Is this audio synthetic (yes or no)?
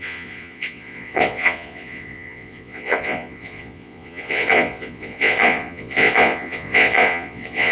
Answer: yes